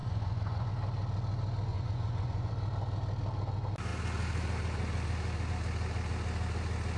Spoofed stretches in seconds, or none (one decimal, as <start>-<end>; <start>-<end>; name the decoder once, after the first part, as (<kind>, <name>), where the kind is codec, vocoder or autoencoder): 0.0-0.7 (vocoder, Vocos); 1.7-2.5